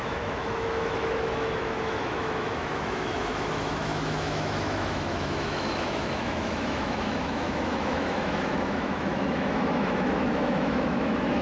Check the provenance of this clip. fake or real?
fake